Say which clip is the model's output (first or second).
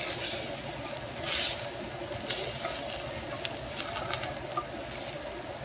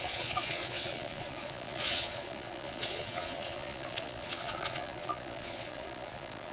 second